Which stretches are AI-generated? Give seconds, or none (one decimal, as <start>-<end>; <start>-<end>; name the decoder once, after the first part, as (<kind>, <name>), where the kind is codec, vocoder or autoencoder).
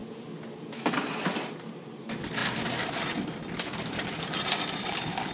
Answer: none